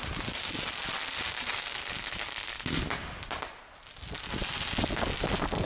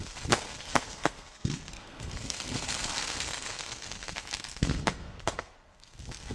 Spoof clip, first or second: second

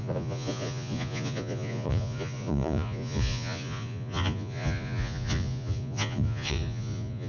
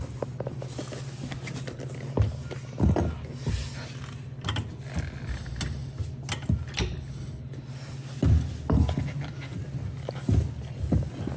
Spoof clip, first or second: first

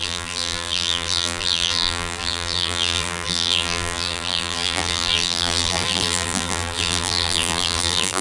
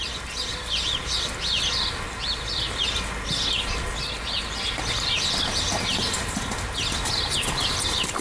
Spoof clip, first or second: first